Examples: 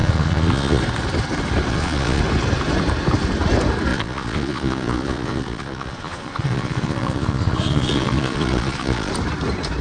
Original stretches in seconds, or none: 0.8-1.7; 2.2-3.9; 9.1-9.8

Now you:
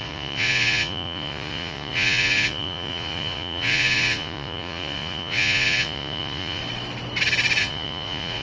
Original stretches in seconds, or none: 6.6-7.6